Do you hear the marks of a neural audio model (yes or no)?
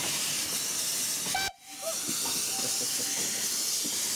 no